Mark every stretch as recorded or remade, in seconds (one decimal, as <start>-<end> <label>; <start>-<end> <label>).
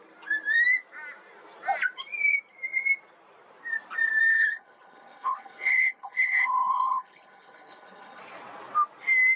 0.0-4.3 recorded; 4.3-8.2 remade; 8.2-9.4 recorded